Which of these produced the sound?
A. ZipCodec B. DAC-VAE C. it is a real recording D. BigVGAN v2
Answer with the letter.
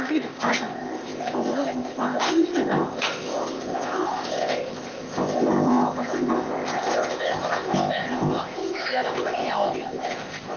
A